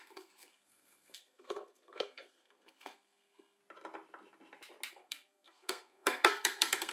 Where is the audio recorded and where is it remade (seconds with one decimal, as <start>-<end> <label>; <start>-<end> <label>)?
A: 0.0-3.6 remade; 3.6-4.9 recorded; 4.9-6.9 remade

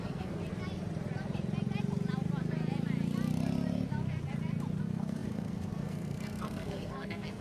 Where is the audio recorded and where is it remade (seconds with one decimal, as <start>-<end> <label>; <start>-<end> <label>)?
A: 0.0-0.4 remade; 0.4-4.8 recorded; 4.8-7.4 remade